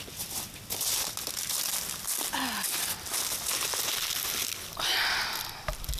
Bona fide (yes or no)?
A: yes